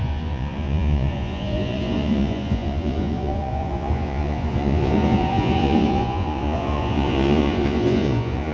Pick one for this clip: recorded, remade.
remade